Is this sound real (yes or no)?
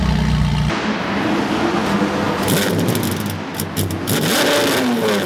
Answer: yes